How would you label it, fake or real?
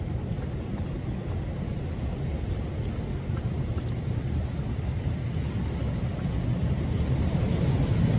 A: real